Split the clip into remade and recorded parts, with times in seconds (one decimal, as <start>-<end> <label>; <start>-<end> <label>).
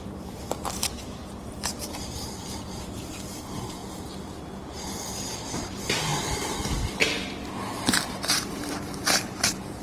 0.0-3.8 remade; 3.8-5.2 recorded; 5.2-6.1 remade; 6.1-7.8 recorded; 7.8-9.8 remade